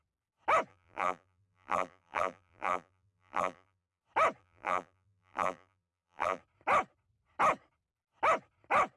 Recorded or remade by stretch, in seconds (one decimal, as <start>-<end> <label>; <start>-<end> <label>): 0.0-0.7 recorded; 0.7-4.0 remade; 4.0-4.4 recorded; 4.4-6.4 remade; 6.4-9.0 recorded